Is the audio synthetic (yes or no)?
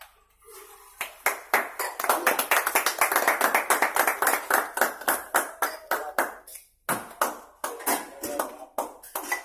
no